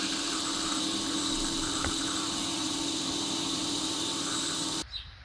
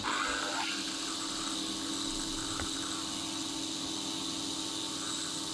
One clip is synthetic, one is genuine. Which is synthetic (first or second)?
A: first